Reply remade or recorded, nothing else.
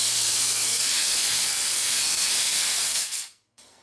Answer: remade